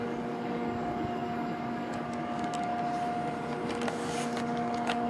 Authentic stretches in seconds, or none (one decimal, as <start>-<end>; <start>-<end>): 2.7-3.9